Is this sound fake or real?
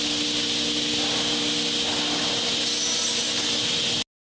real